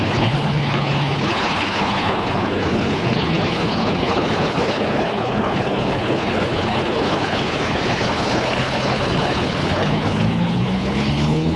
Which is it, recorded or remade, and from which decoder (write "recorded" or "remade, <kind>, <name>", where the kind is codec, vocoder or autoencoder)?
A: remade, codec, HILCodec